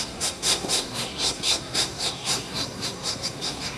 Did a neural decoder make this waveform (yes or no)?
yes